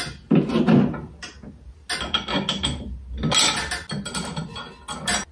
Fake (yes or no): no